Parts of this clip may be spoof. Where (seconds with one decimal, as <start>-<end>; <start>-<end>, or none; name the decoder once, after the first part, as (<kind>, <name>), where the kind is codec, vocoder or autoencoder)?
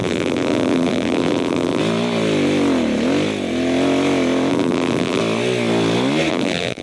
0.0-1.8 (vocoder, BigVGAN v2); 4.5-5.2; 6.3-6.8